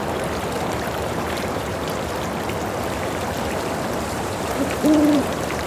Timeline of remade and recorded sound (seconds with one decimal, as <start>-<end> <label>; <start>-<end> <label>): 0.0-1.8 remade; 1.8-4.2 recorded; 4.2-5.7 remade